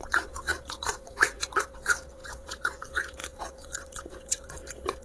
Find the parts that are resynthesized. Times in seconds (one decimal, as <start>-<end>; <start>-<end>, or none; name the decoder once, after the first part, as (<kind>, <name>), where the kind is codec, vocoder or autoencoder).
0.0-5.0 (vocoder, Vocos)